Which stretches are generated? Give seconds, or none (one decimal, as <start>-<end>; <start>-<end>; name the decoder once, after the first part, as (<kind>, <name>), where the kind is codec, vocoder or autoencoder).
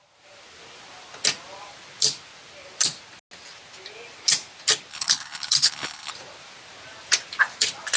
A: 4.9-6.1 (codec, HILCodec)